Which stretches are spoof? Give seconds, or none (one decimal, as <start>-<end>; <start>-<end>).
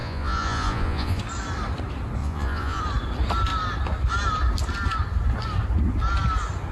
0.0-1.2; 2.2-2.8